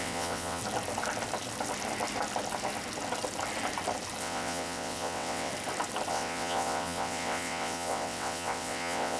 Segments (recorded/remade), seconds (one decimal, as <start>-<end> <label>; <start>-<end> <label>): 0.0-0.6 remade; 0.6-4.2 recorded; 4.2-5.5 remade; 5.5-6.1 recorded; 6.1-9.2 remade

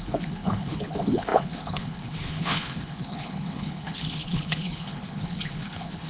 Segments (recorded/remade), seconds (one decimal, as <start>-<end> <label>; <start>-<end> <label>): 0.0-6.1 remade

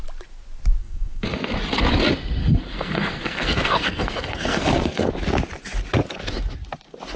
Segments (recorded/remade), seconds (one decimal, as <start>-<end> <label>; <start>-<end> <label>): 0.0-0.8 recorded; 0.8-1.5 remade; 1.5-2.4 recorded; 2.4-5.1 remade; 5.1-7.2 recorded

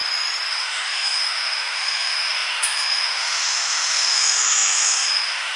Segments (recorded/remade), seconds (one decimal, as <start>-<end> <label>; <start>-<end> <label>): 0.0-0.5 recorded; 0.5-5.6 remade

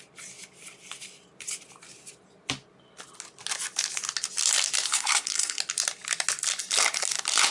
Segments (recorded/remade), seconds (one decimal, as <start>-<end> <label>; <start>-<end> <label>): 0.0-4.9 recorded; 4.9-5.6 remade; 5.6-7.5 recorded

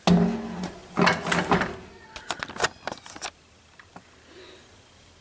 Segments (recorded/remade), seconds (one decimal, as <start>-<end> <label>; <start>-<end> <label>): 0.0-5.2 recorded

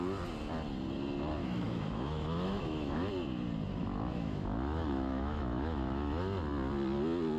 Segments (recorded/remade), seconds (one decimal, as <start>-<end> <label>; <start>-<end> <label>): 0.0-1.4 recorded; 1.4-3.1 remade; 3.1-3.8 recorded; 3.8-6.2 remade; 6.2-7.4 recorded